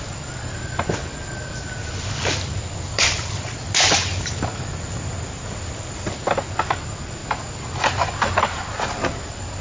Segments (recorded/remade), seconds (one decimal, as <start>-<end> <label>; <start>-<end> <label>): 0.0-9.6 recorded